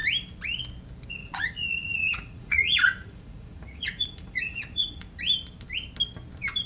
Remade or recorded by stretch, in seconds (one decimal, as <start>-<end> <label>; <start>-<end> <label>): 0.0-1.2 recorded; 1.2-5.2 remade; 5.2-6.7 recorded